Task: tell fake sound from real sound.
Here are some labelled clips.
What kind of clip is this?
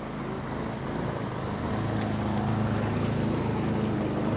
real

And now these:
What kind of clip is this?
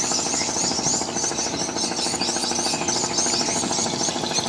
real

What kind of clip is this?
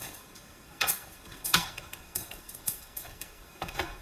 fake